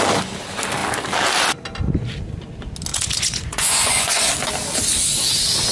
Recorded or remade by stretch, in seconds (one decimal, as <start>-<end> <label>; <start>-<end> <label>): 0.0-2.9 recorded; 2.9-4.3 remade; 4.3-5.7 recorded